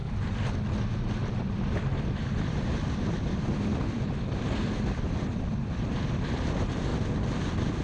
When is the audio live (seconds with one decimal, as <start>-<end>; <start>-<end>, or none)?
6.9-7.8